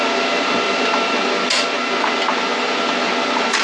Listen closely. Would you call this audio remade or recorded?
recorded